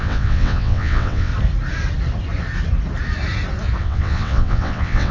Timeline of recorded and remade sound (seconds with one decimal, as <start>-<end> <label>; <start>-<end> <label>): 0.0-1.3 remade; 1.3-3.8 recorded; 3.8-5.1 remade